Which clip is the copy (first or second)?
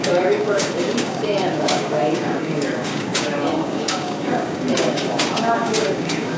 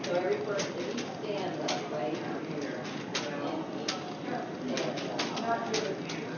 first